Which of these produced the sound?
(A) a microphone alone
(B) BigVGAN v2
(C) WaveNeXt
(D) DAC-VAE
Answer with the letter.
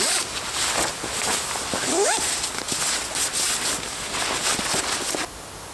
A